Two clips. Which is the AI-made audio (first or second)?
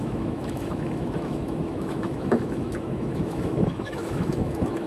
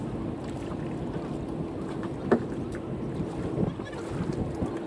first